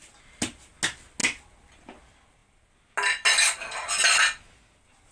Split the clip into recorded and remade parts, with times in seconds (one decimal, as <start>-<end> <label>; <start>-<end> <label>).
0.0-5.1 recorded